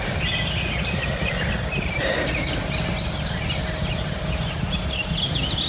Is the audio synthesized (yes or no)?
no